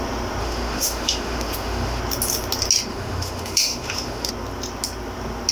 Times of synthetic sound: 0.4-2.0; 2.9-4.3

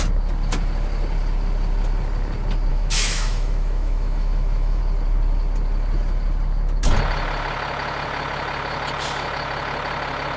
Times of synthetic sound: 2.7-4.8

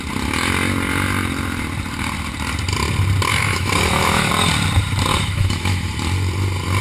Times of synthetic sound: 3.3-4.3; 5.1-5.9

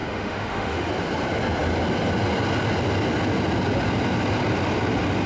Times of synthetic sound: 0.0-0.9

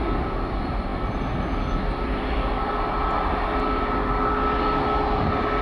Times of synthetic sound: none

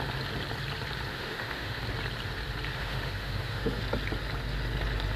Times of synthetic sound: 1.1-1.8; 2.8-3.8